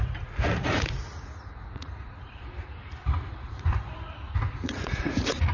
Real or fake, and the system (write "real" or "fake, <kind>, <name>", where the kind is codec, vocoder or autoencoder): fake, vocoder, Vocos